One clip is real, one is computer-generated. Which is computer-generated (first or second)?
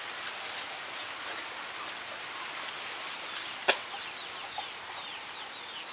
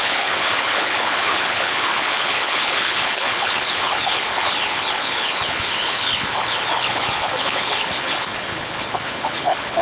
second